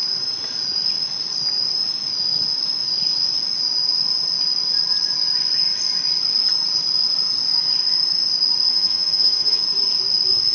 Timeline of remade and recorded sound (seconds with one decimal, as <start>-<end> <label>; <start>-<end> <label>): 0.0-8.7 recorded; 8.7-9.6 remade; 9.6-10.5 recorded